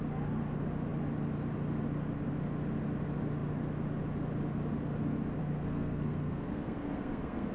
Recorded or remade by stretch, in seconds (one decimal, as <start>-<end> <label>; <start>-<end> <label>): 0.0-5.4 recorded; 5.4-7.5 remade